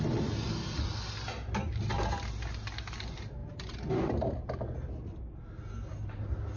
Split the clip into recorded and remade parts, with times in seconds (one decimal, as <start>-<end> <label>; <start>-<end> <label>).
0.0-6.6 recorded